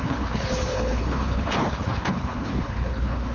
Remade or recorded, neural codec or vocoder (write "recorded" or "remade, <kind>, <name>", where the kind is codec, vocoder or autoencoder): remade, codec, HILCodec